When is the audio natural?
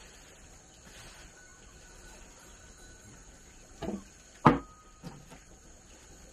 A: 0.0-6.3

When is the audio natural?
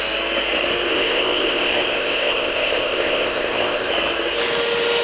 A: 0.0-0.9; 3.9-5.0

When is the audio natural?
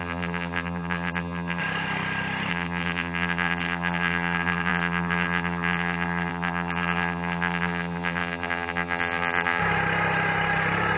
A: 1.6-2.5; 9.6-11.0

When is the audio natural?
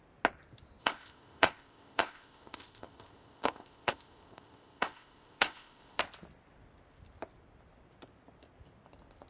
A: 0.0-0.8; 6.0-9.3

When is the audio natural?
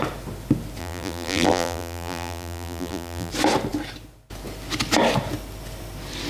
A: 0.0-0.8; 3.3-6.3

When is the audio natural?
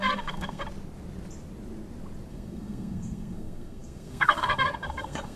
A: 0.6-2.3